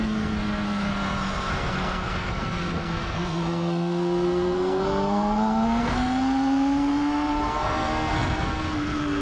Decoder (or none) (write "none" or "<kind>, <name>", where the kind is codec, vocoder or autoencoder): codec, SNAC